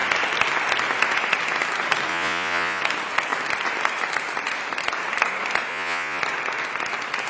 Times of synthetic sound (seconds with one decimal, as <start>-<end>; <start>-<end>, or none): 2.1-2.8; 5.7-6.2